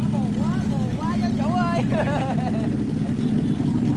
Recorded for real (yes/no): yes